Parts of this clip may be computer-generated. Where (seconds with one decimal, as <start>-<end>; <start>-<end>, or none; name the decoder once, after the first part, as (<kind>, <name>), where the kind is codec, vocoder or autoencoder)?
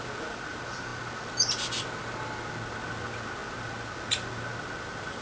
none